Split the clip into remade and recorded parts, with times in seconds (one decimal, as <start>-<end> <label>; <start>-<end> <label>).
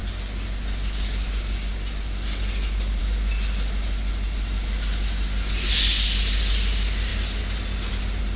0.0-8.4 recorded